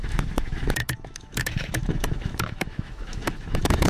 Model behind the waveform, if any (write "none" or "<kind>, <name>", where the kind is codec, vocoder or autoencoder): autoencoder, DAC-VAE